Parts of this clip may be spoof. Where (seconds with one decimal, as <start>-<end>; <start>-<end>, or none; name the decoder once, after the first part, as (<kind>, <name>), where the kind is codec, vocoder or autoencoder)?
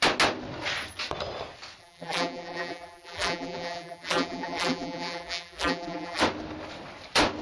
1.8-6.2 (vocoder, BigVGAN v2)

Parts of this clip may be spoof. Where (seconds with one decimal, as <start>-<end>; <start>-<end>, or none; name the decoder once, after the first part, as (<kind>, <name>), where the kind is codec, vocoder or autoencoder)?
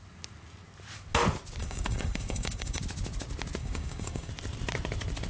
1.6-2.8 (codec, DAC); 3.6-4.3